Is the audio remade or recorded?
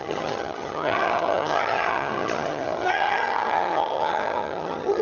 remade